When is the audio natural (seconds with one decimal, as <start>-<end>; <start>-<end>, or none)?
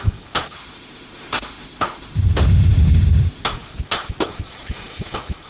0.0-0.6; 3.4-5.5